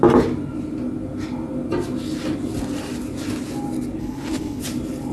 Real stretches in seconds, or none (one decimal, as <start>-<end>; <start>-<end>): 0.0-4.0; 4.6-5.1